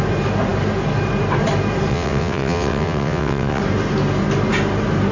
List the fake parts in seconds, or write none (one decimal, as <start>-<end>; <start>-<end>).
1.9-3.6